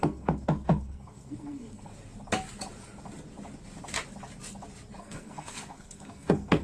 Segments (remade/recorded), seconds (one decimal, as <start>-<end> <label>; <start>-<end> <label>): 0.0-1.9 remade; 1.9-5.0 recorded; 5.0-6.6 remade